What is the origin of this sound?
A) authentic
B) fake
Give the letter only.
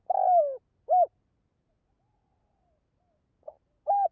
A